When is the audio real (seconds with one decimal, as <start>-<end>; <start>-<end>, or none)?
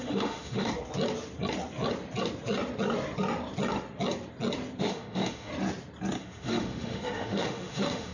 0.7-4.8; 5.5-6.2